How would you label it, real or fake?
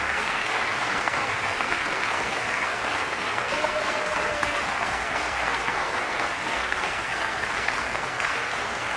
fake